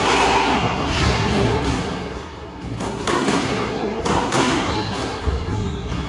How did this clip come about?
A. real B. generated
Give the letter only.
B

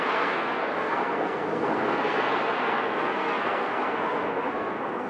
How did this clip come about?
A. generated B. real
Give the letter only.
A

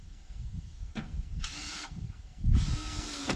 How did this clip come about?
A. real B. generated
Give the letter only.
B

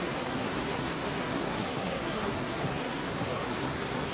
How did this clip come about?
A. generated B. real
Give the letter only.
A